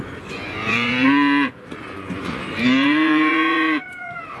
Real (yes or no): no